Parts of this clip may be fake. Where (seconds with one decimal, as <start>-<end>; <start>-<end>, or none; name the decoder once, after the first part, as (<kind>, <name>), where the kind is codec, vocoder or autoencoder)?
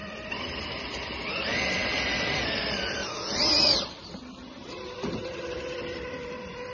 none